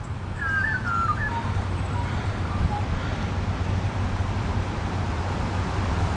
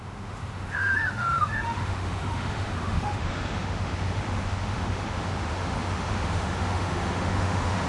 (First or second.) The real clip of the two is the first